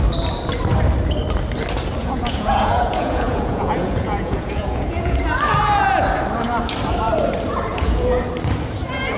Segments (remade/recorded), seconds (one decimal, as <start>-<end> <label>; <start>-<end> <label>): 0.0-2.0 recorded; 2.0-5.2 remade; 5.2-7.7 recorded; 7.7-8.2 remade; 8.2-9.2 recorded